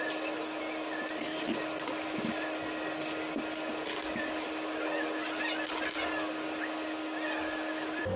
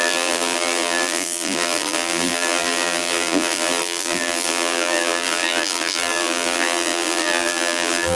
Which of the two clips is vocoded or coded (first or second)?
second